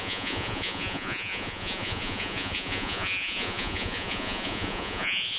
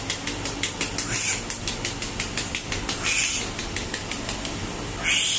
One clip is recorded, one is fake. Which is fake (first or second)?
first